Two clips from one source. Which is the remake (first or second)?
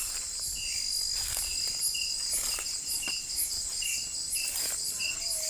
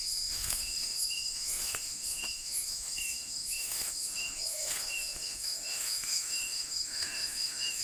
second